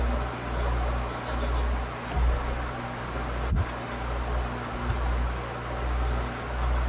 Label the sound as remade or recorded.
recorded